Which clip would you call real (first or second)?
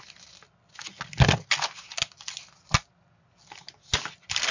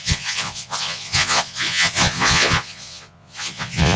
first